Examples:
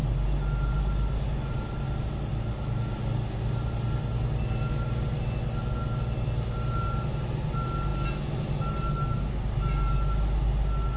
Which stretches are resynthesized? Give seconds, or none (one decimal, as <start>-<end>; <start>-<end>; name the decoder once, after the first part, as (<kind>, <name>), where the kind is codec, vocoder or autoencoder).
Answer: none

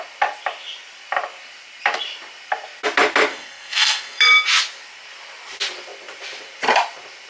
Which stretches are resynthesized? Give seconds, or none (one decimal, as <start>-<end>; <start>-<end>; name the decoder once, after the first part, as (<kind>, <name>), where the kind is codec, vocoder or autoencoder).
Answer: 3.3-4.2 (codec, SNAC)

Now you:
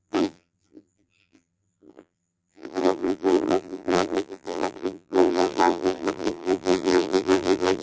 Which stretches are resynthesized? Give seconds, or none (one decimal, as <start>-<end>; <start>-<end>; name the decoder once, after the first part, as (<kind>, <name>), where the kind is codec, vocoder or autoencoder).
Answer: 0.0-7.8 (vocoder, BigVGAN v2)

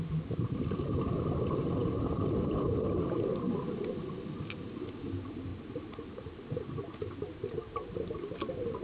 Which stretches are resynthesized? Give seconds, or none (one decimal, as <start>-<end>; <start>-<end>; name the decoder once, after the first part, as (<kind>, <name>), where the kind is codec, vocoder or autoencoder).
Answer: 0.0-8.8 (vocoder, BigVGAN v2)

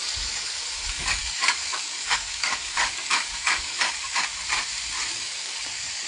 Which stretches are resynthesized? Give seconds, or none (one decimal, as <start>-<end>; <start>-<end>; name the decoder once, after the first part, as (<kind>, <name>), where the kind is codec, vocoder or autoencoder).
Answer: 0.0-4.3 (codec, DAC); 5.1-6.1

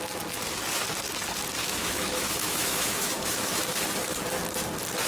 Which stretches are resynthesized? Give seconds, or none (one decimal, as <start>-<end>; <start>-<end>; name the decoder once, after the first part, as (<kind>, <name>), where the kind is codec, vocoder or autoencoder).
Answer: 1.6-3.7 (autoencoder, DAC-VAE)

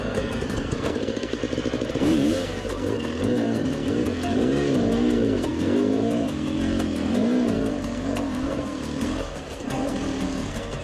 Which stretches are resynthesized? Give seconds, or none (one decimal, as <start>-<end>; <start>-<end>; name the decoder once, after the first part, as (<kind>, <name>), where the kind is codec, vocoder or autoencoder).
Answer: 0.0-1.4 (codec, SNAC); 1.9-10.8